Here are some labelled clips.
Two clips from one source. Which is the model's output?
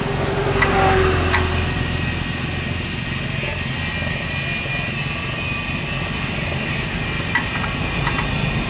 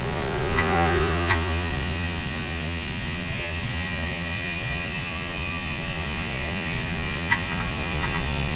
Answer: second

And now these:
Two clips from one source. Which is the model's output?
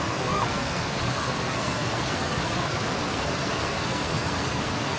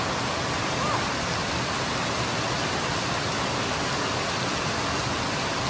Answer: first